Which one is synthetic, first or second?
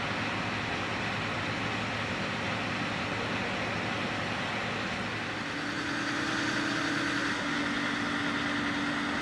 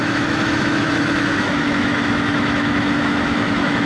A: second